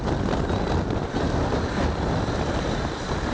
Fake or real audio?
real